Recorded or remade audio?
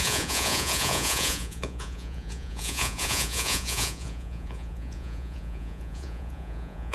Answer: remade